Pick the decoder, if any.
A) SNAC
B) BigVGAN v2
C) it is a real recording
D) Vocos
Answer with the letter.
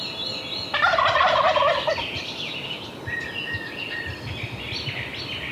C